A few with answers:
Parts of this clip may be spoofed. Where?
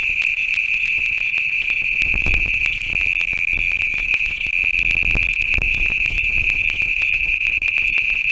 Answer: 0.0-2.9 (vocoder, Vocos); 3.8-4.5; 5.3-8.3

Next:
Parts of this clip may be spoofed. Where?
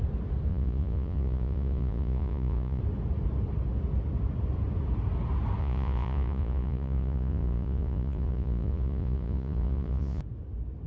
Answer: 0.5-2.8 (vocoder, Vocos); 5.6-10.2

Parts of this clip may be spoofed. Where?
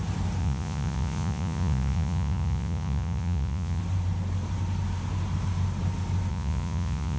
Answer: 0.4-3.8 (vocoder, Vocos); 6.3-7.2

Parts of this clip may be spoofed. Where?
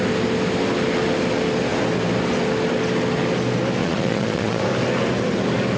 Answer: 3.8-4.6 (vocoder, Vocos)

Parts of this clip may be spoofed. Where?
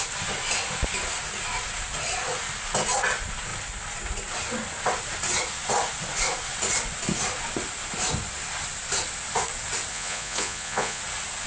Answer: 9.9-11.0 (vocoder, Vocos)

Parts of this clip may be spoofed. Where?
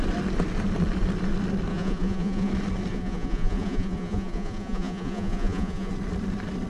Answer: 1.7-2.5 (vocoder, Vocos); 2.9-5.9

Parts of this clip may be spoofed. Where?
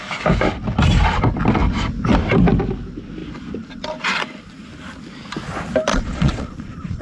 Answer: 5.9-7.0 (vocoder, Vocos)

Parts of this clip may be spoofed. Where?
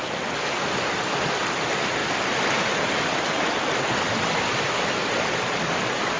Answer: none